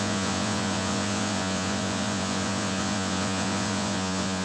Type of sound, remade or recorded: remade